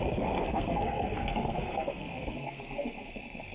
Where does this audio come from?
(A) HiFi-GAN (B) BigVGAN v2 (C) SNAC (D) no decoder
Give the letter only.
C